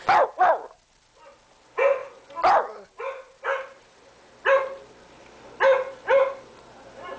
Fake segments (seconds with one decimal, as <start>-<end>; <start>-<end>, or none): none